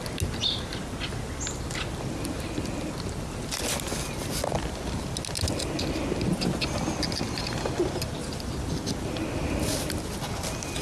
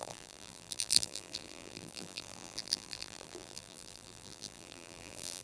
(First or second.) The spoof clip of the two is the second